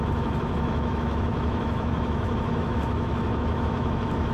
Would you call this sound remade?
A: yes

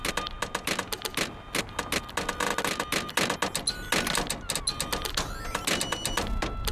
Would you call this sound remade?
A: no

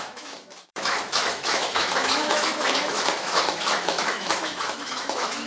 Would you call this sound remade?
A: yes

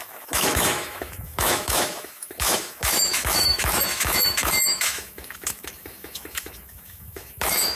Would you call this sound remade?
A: yes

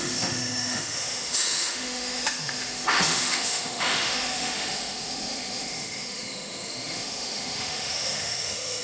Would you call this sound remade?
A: yes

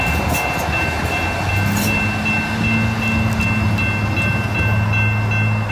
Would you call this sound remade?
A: no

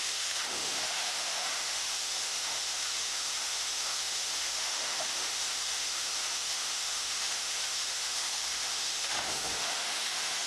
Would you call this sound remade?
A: yes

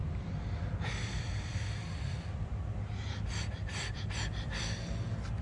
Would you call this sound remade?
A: no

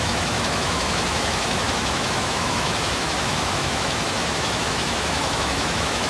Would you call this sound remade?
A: yes